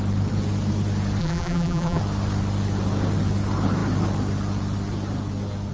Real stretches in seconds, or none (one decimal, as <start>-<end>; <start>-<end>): 0.0-1.2; 2.0-5.7